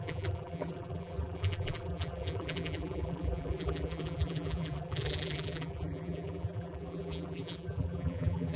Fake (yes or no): yes